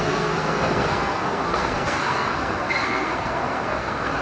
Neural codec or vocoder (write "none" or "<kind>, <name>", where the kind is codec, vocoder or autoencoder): codec, SNAC